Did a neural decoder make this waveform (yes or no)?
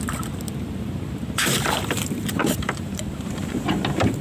yes